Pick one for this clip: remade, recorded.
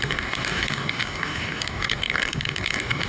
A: remade